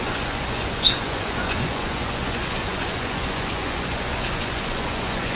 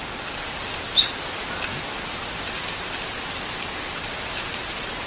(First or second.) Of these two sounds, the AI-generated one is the first